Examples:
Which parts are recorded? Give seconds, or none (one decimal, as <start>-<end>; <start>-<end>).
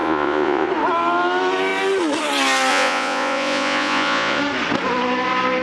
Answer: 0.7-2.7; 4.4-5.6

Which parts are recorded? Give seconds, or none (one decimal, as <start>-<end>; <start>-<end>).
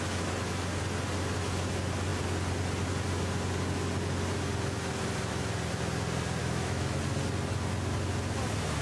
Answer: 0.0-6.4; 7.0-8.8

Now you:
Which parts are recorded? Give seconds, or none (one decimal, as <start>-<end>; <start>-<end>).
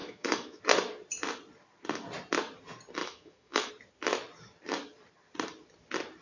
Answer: 0.6-3.0; 3.7-6.2